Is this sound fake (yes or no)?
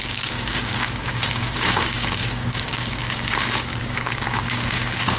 yes